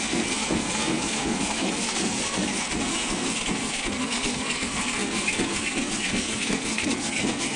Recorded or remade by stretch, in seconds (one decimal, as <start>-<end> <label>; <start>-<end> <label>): 0.0-7.6 remade

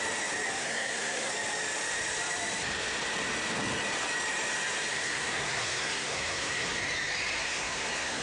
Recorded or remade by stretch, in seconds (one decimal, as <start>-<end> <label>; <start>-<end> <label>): 0.0-0.6 recorded; 0.6-1.3 remade; 1.3-4.9 recorded; 4.9-6.8 remade; 6.8-7.4 recorded; 7.4-8.2 remade

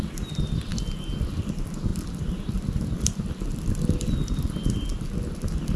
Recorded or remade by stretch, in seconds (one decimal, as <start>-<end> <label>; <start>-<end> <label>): 0.0-5.8 recorded

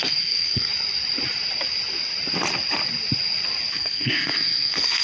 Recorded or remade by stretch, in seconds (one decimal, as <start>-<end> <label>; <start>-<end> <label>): 0.0-0.7 remade; 0.7-3.7 recorded; 3.7-5.0 remade

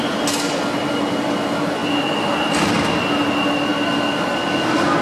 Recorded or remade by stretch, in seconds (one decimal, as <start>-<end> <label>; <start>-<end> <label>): 0.0-5.0 recorded

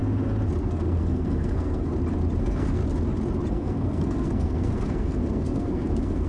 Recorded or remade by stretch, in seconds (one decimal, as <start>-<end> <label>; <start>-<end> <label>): 0.0-0.6 recorded; 0.6-1.9 remade; 1.9-2.4 recorded; 2.4-2.8 remade; 2.8-3.5 recorded; 3.5-6.3 remade

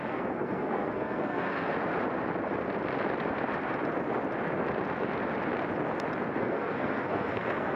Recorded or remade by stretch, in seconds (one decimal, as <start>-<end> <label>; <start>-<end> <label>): 0.0-1.7 remade; 1.7-6.4 recorded; 6.4-7.8 remade